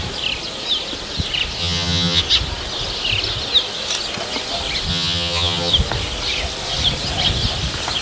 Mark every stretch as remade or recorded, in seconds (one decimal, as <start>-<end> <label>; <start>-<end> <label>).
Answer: 0.0-1.6 recorded; 1.6-2.2 remade; 2.2-4.9 recorded; 4.9-5.7 remade; 5.7-8.0 recorded